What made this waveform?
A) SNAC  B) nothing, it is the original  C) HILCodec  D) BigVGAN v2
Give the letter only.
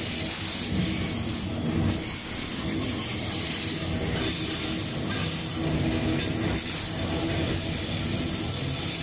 B